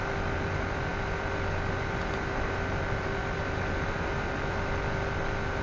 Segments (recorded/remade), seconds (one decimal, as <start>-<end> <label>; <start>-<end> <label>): 0.0-5.6 recorded